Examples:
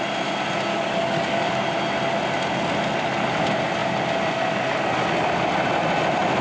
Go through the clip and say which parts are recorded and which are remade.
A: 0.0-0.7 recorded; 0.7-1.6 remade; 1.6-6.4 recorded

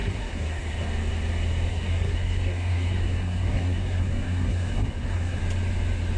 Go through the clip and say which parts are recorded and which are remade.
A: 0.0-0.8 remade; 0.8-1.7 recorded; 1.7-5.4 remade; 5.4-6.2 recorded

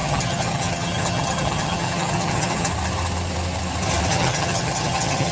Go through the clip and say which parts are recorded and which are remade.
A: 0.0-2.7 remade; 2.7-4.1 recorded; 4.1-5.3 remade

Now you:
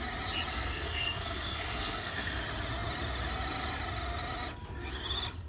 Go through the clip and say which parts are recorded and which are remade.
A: 0.0-0.5 recorded; 0.5-2.4 remade; 2.4-5.5 recorded

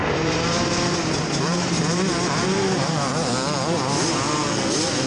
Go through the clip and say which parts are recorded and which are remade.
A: 0.0-3.1 remade; 3.1-5.1 recorded